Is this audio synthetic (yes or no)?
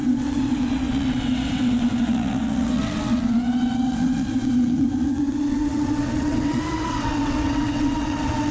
yes